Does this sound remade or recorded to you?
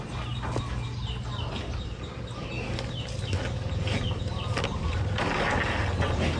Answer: recorded